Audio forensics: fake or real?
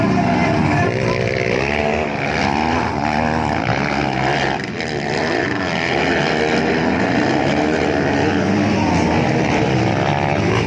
real